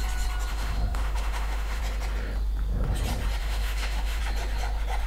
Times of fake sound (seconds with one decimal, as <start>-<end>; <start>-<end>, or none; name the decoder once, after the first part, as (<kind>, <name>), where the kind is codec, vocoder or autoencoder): 0.5-1.8 (autoencoder, DAC-VAE); 3.4-4.2